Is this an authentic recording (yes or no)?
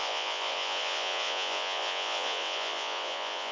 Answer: no